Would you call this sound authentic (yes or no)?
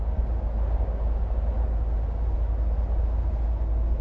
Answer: yes